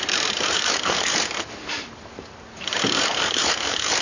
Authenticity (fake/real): fake